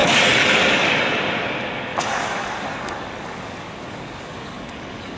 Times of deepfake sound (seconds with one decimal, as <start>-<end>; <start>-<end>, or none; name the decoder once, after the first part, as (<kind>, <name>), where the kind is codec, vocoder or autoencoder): 0.0-1.0 (codec, DAC); 1.9-5.2